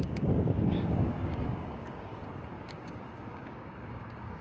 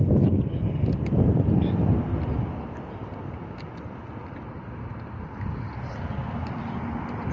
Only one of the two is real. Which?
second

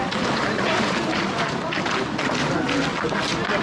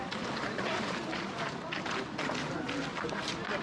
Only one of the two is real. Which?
first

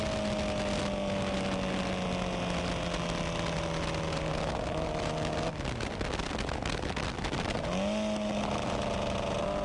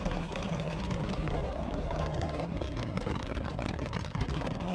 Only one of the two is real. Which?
first